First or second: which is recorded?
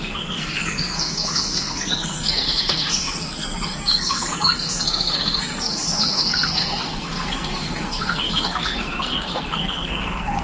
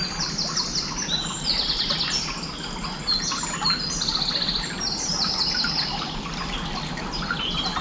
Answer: second